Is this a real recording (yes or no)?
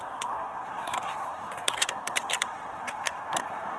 no